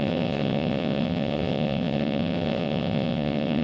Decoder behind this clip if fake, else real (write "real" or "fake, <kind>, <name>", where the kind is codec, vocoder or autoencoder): fake, vocoder, WaveNeXt